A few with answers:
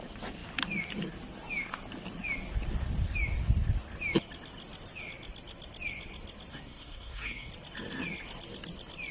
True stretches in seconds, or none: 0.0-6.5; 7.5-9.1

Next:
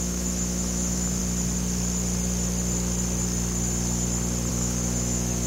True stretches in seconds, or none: 1.2-4.5

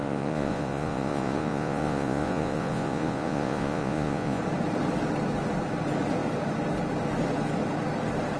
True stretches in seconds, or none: 4.4-8.4

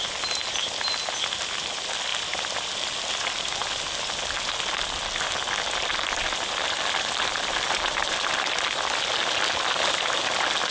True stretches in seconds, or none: 0.0-2.1; 3.8-10.7

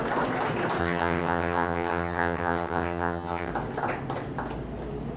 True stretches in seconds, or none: 0.0-0.8; 3.5-5.2

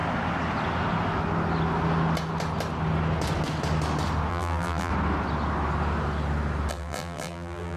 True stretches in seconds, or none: 0.0-4.3; 4.9-6.7